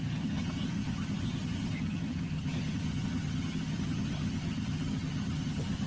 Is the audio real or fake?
fake